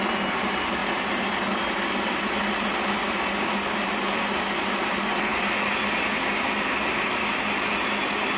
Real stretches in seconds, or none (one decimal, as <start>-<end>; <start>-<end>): 0.0-8.4